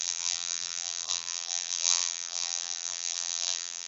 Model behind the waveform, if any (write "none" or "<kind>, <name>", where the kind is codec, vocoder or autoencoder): vocoder, BigVGAN v2